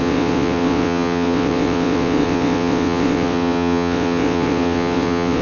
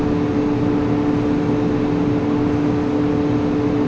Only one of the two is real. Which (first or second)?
second